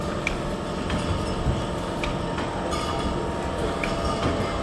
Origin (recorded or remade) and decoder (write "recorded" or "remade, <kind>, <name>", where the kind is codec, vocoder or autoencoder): recorded